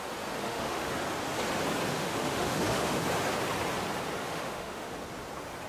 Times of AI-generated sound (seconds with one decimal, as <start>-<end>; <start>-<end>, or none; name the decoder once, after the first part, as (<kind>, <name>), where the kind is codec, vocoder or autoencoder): 0.4-0.9 (autoencoder, DAC-VAE); 1.9-3.0; 4.2-4.9